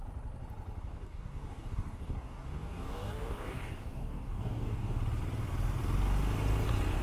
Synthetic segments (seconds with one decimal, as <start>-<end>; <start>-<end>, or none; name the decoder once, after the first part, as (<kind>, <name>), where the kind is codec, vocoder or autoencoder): 0.8-5.0 (codec, DAC)

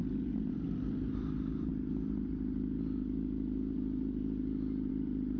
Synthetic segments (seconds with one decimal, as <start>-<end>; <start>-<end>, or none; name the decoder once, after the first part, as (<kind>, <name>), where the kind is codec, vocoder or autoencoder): 0.0-1.7 (vocoder, BigVGAN v2); 4.9-5.4

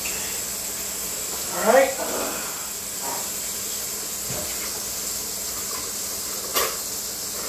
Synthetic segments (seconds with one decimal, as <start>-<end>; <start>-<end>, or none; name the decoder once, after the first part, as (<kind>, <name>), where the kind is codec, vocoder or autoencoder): none

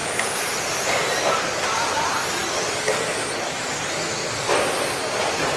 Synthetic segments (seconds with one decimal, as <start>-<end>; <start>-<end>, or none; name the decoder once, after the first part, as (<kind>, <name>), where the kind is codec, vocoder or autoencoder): none

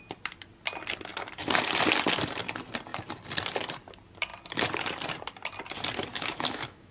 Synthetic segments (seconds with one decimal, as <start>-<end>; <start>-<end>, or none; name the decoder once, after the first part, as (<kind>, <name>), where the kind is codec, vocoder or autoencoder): 6.1-6.9 (autoencoder, DAC-VAE)